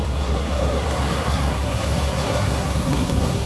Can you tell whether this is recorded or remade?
remade